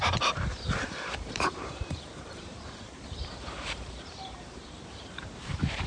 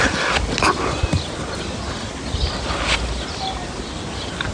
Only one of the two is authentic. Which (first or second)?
second